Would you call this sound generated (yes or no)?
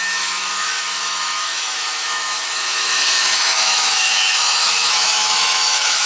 yes